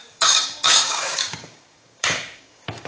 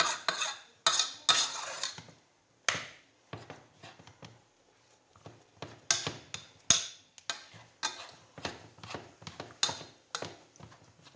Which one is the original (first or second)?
second